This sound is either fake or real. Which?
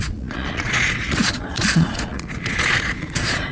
fake